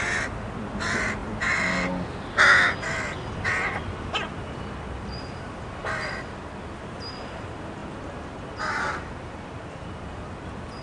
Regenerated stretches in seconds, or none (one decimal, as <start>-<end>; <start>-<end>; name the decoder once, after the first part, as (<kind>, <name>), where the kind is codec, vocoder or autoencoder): none